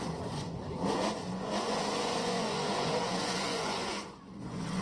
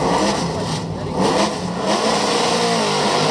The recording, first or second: second